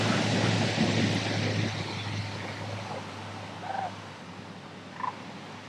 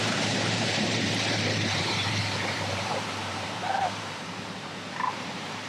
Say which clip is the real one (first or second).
first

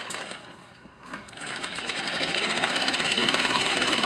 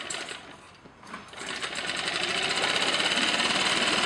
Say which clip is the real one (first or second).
second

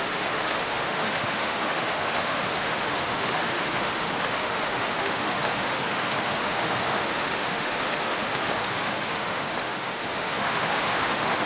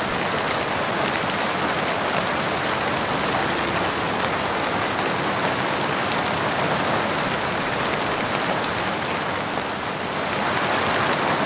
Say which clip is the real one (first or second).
second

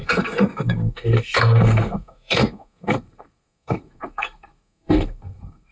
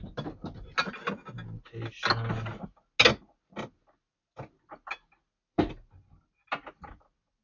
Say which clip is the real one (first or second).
second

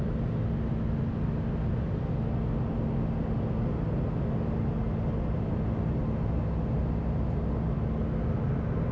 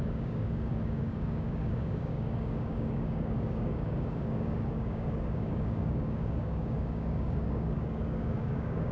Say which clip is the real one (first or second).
first